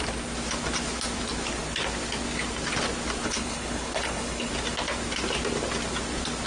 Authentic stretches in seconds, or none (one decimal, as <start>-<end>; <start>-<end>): 0.0-3.2; 4.5-6.5